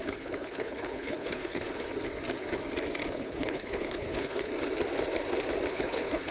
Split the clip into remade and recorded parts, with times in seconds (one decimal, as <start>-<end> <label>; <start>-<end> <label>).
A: 0.0-1.9 remade; 1.9-3.1 recorded; 3.1-4.5 remade; 4.5-5.7 recorded; 5.7-6.3 remade